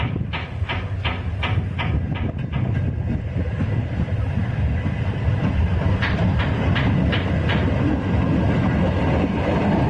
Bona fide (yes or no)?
yes